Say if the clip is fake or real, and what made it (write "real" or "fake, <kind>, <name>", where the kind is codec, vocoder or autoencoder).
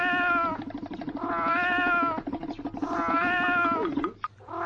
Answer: real